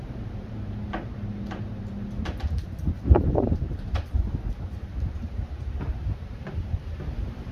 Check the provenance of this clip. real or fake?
fake